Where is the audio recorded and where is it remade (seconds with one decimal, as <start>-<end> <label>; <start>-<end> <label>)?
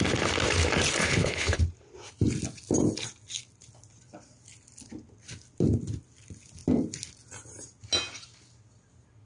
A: 0.0-1.0 recorded; 1.0-1.6 remade; 1.6-9.2 recorded